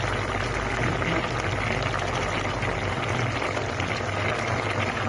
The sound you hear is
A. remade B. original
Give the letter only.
B